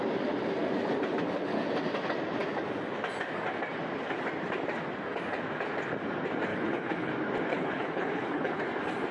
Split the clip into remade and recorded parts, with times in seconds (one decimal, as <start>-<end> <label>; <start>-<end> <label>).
0.0-6.5 recorded; 6.5-7.1 remade; 7.1-7.5 recorded; 7.5-8.6 remade; 8.6-9.1 recorded